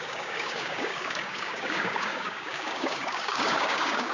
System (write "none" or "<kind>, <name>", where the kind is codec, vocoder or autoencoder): codec, DAC